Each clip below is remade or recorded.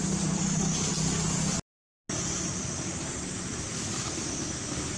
recorded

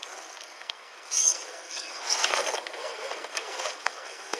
remade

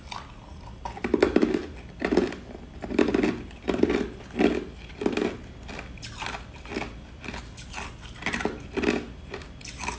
recorded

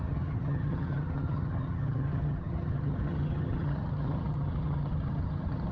remade